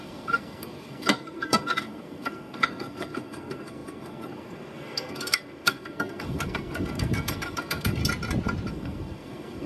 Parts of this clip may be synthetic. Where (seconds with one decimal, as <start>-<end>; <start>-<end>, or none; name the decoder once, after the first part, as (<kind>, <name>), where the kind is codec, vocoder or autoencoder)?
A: 0.0-8.0 (codec, SNAC); 8.7-9.7

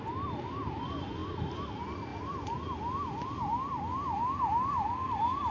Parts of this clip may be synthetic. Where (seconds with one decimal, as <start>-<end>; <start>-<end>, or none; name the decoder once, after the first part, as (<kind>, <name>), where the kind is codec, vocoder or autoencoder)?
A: none

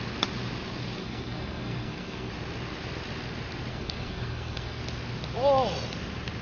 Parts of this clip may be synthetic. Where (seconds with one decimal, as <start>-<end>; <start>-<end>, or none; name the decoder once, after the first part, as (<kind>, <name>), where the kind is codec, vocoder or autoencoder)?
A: 1.0-2.3 (codec, SNAC); 3.7-4.8

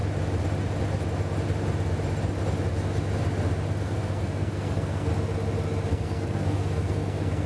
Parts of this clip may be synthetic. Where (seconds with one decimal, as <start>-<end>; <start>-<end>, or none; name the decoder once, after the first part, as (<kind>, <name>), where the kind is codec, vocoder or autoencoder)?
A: 3.8-5.1 (codec, SNAC); 5.9-7.5

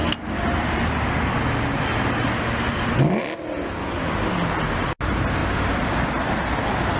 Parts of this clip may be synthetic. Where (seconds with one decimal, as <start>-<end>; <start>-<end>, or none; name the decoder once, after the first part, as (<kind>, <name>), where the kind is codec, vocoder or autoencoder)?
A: none

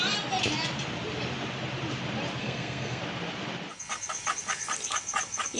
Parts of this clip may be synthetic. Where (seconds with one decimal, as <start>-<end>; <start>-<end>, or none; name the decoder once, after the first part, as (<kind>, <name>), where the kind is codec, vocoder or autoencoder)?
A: 2.4-3.0 (codec, SNAC)

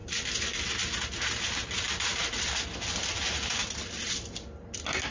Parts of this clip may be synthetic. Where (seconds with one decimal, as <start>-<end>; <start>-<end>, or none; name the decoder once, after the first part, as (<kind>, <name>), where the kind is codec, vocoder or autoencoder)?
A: none

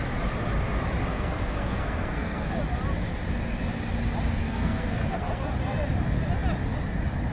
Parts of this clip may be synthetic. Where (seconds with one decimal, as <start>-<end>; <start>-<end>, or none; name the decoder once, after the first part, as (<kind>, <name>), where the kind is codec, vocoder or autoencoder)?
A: 1.1-2.6 (codec, SNAC); 4.4-5.5